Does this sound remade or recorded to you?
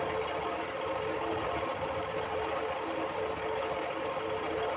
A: recorded